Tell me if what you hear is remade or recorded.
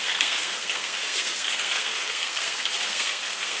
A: remade